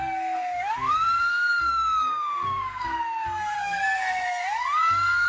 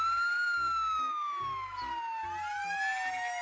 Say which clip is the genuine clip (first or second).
second